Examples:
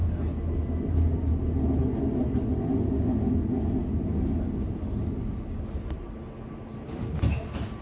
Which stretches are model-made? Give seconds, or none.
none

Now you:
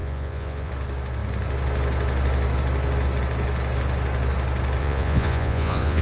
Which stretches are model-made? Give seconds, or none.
0.0-0.7; 4.8-6.0

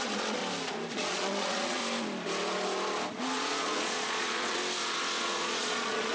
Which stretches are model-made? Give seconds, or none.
0.0-0.4; 0.9-1.8; 3.1-4.6; 5.2-6.1

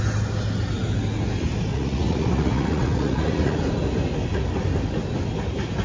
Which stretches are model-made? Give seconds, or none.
1.7-3.6